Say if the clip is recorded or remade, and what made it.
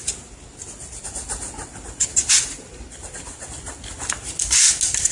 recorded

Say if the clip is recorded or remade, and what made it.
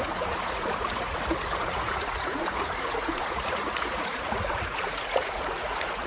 remade, vocoder, Vocos